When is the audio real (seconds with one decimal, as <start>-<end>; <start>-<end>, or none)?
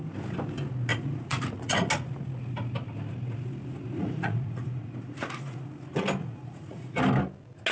0.0-0.9; 1.9-4.0; 5.7-6.2; 7.0-7.7